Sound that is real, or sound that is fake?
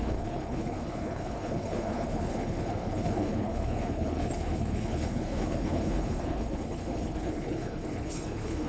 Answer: fake